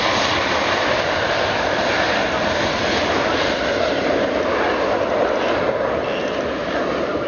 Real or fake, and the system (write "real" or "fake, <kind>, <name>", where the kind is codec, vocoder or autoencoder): real